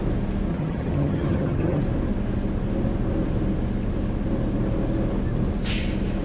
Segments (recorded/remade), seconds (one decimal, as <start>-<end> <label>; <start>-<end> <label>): 0.0-0.5 recorded; 0.5-1.8 remade; 1.8-6.2 recorded